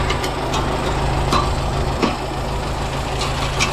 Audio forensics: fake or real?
real